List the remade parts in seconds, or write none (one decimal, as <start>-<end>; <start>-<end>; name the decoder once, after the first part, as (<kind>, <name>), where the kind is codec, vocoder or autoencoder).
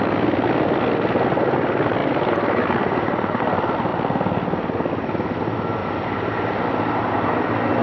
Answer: 2.0-3.4 (vocoder, BigVGAN v2); 5.8-6.6